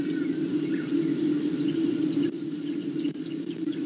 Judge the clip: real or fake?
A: fake